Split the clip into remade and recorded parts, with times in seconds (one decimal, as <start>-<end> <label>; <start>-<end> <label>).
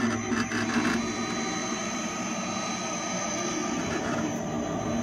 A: 0.0-1.6 recorded; 1.6-3.3 remade; 3.3-5.0 recorded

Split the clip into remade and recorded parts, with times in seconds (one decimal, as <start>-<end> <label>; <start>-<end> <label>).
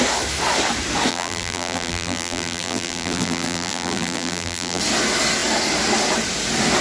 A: 0.0-1.1 recorded; 1.1-4.8 remade; 4.8-6.8 recorded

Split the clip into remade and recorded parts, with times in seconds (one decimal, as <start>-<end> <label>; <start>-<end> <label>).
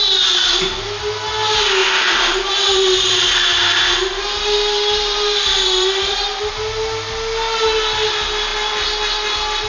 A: 0.0-1.8 recorded; 1.8-6.5 remade; 6.5-9.7 recorded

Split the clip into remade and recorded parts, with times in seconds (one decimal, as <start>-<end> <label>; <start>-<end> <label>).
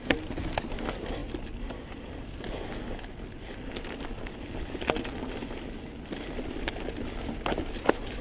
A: 0.0-8.2 recorded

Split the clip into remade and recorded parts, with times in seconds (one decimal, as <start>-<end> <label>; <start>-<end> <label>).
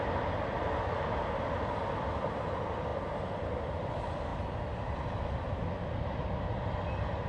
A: 0.0-7.3 recorded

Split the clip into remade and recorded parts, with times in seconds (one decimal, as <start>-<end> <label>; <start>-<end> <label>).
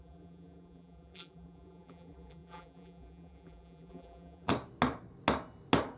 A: 0.0-4.5 remade; 4.5-6.0 recorded